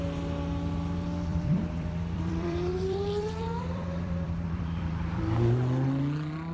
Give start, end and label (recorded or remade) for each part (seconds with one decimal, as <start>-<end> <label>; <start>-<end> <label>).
0.0-1.3 recorded; 1.3-5.2 remade; 5.2-6.5 recorded